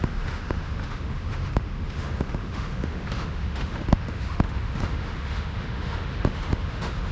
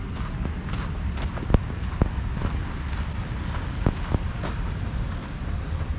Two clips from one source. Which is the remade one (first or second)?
first